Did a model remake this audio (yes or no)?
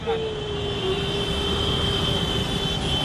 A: no